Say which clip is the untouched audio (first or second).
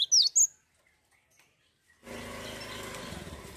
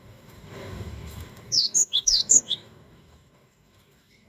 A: first